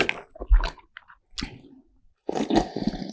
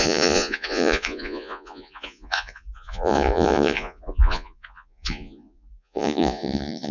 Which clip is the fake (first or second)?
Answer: second